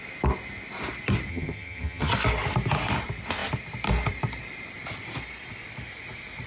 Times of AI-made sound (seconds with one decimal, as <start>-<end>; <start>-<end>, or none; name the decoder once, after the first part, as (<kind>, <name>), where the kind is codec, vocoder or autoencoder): 1.3-2.1 (vocoder, HiFi-GAN)

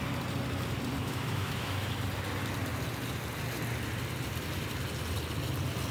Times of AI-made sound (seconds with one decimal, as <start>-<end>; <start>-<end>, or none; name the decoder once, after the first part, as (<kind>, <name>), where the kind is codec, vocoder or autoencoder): 1.0-1.9 (autoencoder, DAC-VAE)

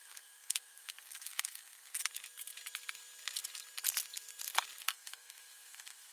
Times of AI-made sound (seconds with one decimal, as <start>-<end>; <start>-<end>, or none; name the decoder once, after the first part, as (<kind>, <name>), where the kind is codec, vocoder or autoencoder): 0.0-2.0 (codec, SNAC); 4.8-6.1

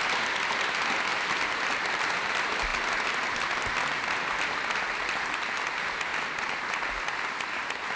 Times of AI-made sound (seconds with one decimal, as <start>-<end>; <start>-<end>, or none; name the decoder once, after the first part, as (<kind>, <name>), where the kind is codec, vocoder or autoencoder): none